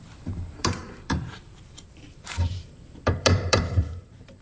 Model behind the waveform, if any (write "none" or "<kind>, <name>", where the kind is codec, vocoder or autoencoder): vocoder, BigVGAN v2